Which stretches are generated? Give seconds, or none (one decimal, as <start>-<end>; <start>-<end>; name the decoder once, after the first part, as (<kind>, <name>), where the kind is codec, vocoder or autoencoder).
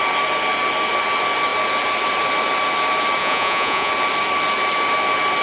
3.2-3.9 (vocoder, Vocos)